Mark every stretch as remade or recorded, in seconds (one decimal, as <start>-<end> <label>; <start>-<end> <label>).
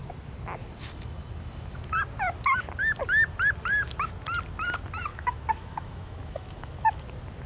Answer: 0.0-5.1 recorded; 5.1-7.0 remade; 7.0-7.5 recorded